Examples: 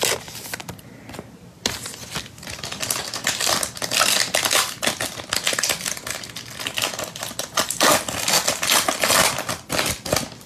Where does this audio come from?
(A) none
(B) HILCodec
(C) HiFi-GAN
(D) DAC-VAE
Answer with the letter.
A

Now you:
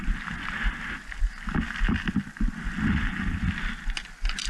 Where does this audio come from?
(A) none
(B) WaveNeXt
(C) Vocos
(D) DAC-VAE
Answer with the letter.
A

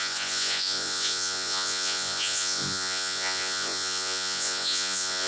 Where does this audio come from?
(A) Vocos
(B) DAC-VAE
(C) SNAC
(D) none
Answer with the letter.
A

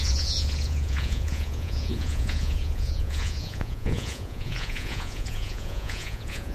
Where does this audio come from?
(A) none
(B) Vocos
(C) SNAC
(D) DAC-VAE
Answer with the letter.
B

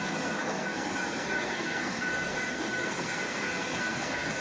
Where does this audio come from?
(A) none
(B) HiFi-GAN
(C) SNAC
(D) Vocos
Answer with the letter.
C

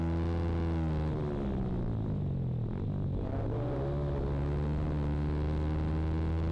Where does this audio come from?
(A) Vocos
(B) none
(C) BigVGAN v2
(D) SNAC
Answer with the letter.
B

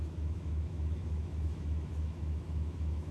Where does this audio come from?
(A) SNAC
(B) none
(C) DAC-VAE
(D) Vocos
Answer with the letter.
C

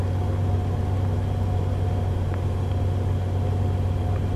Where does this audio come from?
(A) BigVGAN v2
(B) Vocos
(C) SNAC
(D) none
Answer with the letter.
D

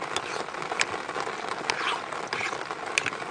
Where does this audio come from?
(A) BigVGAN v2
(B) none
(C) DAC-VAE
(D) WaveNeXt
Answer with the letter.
B